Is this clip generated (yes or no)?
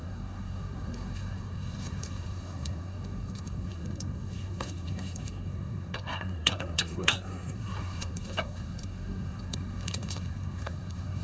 yes